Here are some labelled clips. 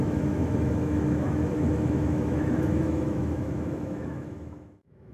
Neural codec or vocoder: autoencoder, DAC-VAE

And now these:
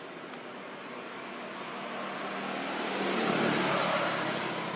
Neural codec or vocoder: none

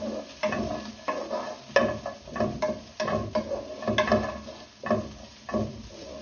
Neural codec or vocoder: none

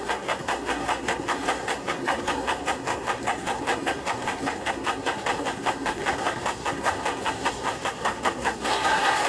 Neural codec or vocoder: codec, SNAC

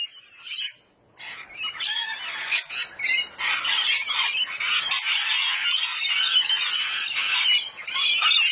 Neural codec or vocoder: none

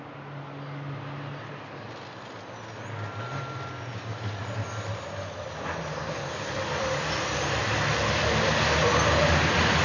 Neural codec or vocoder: none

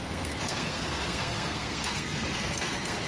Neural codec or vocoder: codec, SNAC